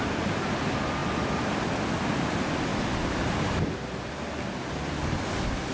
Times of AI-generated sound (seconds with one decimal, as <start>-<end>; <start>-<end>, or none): none